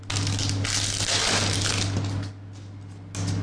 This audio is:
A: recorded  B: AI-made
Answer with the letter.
A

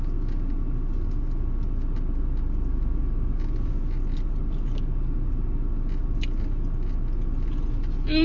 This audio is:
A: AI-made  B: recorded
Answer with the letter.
B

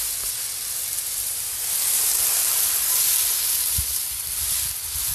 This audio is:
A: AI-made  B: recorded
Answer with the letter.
A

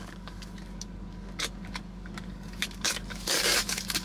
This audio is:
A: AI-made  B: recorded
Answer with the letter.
A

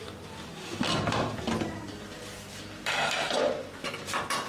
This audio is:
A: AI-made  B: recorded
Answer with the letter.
B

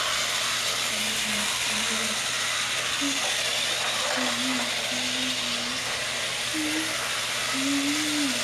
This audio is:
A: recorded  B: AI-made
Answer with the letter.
A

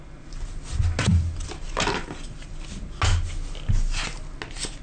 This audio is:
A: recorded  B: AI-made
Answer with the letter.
A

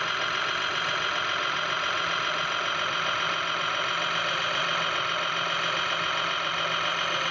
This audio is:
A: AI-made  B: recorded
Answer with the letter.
B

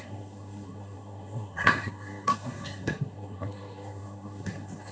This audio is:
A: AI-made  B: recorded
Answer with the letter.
A